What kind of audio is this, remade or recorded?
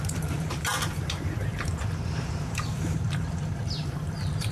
remade